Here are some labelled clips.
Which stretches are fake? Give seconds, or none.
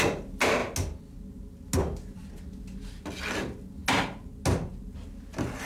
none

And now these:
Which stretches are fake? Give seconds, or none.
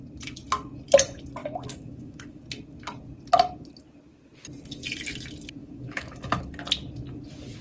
1.4-2.4 (autoencoder, DAC-VAE); 5.6-6.4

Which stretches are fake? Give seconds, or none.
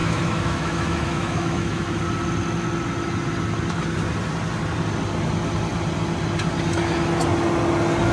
0.0-2.0 (autoencoder, DAC-VAE)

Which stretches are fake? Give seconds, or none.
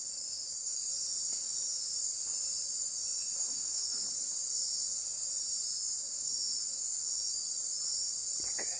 0.4-0.9 (autoencoder, DAC-VAE); 3.2-4.0; 5.7-7.4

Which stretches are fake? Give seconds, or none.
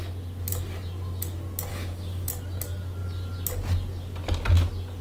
1.7-2.3 (autoencoder, DAC-VAE)